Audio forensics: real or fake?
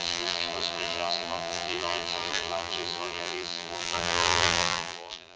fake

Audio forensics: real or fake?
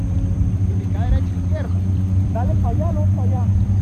fake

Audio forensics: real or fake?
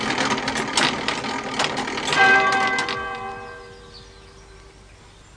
real